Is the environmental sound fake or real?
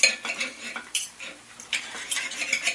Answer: real